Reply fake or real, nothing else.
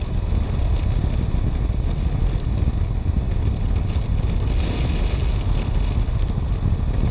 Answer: real